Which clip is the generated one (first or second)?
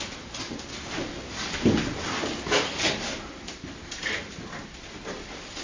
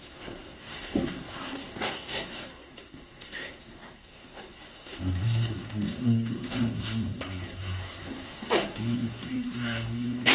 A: second